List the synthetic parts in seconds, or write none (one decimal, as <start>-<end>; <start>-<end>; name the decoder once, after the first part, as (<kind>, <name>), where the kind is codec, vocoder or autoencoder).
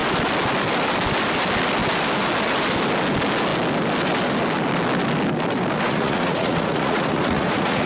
5.9-7.9 (vocoder, Vocos)